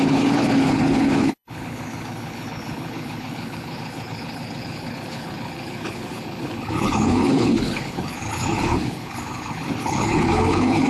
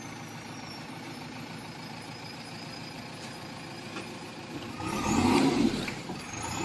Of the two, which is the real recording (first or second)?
second